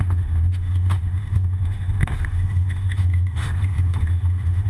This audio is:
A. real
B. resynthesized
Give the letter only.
B